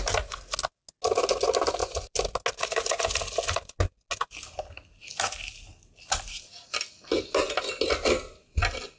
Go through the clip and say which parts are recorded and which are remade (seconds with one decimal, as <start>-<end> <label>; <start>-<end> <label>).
0.0-9.0 recorded